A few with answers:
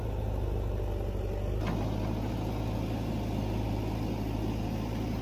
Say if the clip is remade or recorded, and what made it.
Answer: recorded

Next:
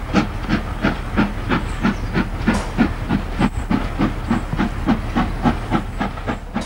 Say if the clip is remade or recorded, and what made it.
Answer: recorded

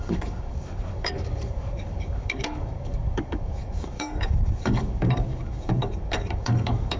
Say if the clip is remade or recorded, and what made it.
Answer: remade, codec, DAC